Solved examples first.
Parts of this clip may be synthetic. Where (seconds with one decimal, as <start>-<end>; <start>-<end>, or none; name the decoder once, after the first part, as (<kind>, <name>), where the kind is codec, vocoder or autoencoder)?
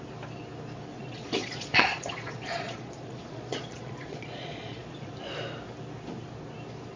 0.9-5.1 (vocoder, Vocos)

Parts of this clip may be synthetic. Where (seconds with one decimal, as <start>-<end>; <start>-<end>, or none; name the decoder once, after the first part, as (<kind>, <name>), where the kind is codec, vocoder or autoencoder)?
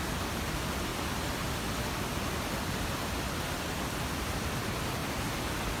none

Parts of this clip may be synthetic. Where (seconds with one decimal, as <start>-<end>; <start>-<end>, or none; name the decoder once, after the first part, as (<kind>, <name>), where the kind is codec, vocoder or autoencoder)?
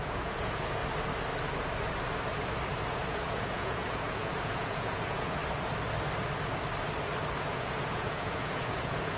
0.0-0.8 (vocoder, Vocos); 2.9-5.4; 7.4-9.2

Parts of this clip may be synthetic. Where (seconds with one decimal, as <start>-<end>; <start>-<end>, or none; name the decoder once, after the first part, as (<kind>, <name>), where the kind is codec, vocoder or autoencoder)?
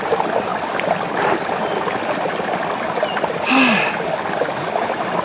none